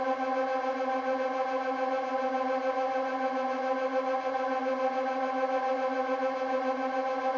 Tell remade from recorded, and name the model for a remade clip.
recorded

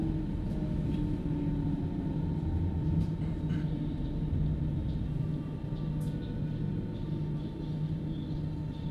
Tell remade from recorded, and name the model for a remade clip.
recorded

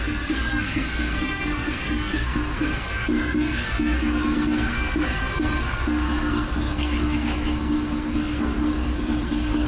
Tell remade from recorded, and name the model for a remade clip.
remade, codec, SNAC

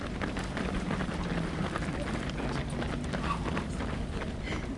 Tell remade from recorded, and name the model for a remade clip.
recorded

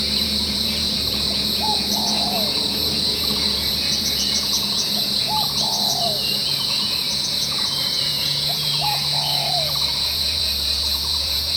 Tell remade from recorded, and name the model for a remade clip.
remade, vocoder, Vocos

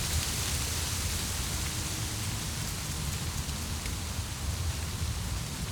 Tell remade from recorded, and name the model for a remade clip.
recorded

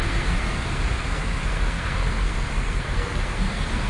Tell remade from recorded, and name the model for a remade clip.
remade, codec, SNAC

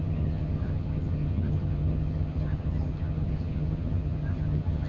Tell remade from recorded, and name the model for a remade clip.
remade, vocoder, HiFi-GAN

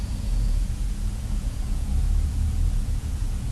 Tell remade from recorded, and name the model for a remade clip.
remade, vocoder, Vocos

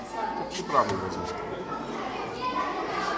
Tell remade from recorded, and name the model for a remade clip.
recorded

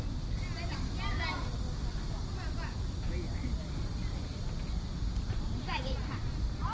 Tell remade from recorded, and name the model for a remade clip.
recorded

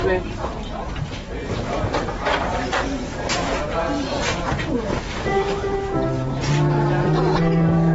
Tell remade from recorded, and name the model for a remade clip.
remade, vocoder, BigVGAN v2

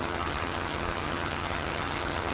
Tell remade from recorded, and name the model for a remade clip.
remade, vocoder, HiFi-GAN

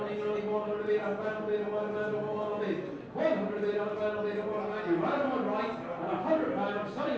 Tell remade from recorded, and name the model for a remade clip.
recorded